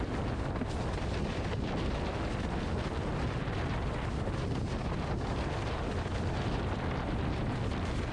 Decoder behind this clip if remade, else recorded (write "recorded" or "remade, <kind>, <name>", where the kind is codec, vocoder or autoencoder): recorded